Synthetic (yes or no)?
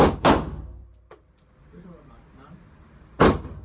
no